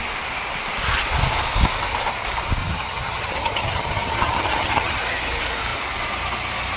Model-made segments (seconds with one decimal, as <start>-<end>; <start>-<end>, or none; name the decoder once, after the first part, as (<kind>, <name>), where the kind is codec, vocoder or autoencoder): 2.6-5.0 (vocoder, HiFi-GAN)

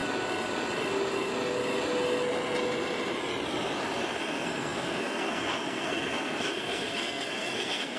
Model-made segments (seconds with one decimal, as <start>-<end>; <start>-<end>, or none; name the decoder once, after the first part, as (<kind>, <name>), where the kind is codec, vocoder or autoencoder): 4.2-8.0 (codec, SNAC)

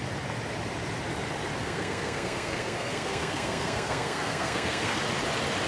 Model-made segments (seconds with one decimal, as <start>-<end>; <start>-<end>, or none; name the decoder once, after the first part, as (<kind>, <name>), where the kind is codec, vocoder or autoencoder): 1.6-5.0 (codec, SNAC)

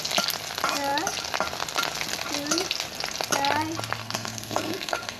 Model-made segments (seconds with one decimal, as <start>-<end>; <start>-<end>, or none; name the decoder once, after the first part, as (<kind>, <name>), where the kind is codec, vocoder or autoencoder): 4.0-5.2 (codec, SNAC)